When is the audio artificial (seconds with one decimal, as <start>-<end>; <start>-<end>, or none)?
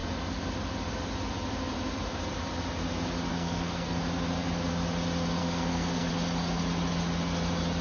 3.3-4.0; 5.4-6.1